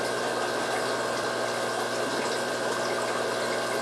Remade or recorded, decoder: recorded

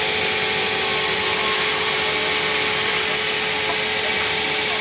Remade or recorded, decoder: recorded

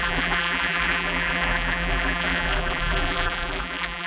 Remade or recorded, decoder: remade, vocoder, BigVGAN v2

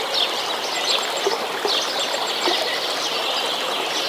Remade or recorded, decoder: recorded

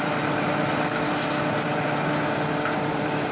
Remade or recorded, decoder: recorded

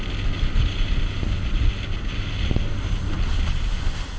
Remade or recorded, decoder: recorded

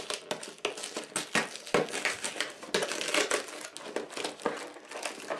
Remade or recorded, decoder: recorded